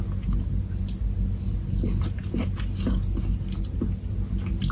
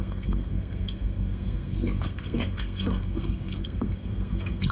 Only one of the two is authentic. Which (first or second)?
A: first